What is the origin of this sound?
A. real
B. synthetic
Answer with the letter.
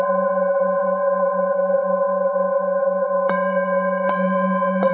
B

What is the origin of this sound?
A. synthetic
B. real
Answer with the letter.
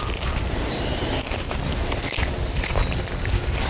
B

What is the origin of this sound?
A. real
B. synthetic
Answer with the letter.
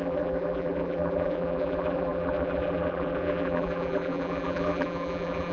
B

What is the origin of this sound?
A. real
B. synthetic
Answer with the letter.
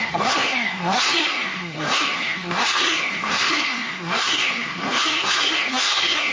B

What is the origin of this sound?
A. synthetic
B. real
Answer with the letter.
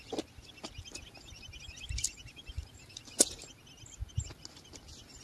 B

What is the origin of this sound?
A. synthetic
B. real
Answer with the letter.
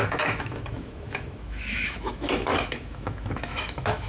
A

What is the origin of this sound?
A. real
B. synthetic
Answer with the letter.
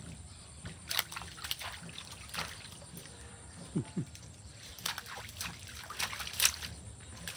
B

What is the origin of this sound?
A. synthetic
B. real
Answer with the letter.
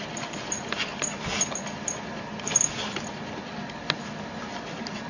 B